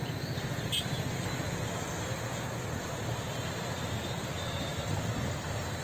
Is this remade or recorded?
recorded